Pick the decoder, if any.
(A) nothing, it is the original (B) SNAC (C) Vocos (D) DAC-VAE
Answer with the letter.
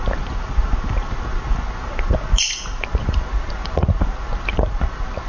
A